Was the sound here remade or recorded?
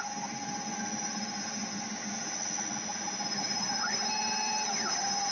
recorded